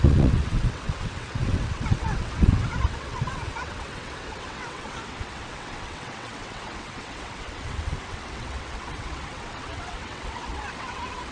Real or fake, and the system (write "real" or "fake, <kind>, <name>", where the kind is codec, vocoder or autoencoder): fake, vocoder, WaveNeXt